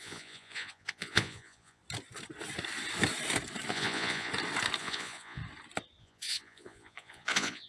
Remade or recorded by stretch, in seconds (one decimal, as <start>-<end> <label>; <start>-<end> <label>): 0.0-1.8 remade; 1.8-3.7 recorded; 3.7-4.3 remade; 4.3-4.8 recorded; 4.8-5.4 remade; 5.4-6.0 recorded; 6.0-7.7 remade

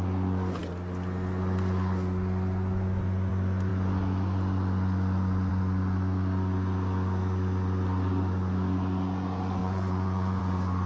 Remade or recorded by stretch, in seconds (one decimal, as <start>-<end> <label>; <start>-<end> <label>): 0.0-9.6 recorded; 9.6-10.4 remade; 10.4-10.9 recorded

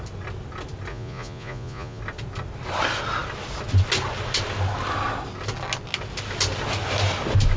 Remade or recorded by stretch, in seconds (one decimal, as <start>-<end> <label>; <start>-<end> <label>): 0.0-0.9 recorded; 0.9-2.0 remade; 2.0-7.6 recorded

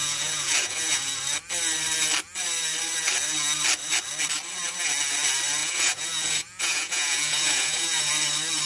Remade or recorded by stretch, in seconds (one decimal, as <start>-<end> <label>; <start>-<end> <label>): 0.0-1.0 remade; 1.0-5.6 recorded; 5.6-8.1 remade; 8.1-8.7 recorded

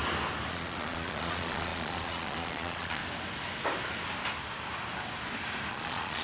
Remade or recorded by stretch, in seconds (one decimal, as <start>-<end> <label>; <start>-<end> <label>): 0.0-0.5 recorded; 0.5-3.0 remade; 3.0-5.7 recorded; 5.7-6.2 remade

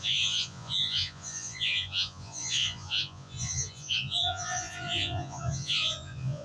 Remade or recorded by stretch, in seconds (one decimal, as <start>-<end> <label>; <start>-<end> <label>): 0.0-6.4 remade